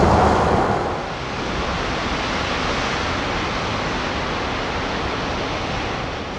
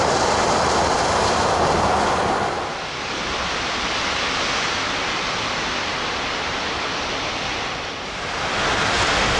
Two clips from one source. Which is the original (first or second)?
first